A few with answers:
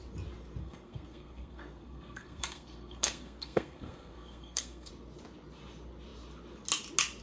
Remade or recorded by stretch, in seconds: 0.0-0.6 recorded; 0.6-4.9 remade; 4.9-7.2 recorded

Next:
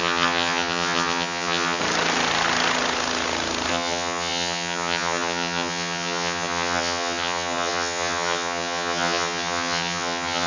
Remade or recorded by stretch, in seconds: 0.0-1.8 remade; 1.8-3.7 recorded; 3.7-10.5 remade

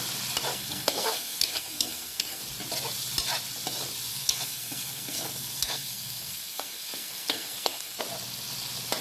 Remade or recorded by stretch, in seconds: 0.0-0.5 recorded; 0.5-2.4 remade; 2.4-4.1 recorded; 4.1-8.0 remade; 8.0-9.0 recorded

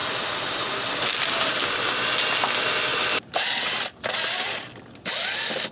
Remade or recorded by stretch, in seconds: 0.0-2.9 recorded; 2.9-3.4 remade; 3.4-5.7 recorded

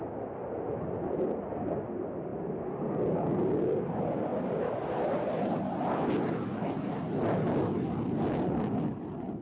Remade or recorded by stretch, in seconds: 0.0-9.4 recorded